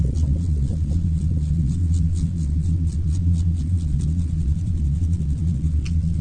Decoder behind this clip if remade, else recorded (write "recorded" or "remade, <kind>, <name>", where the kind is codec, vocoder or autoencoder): remade, vocoder, Vocos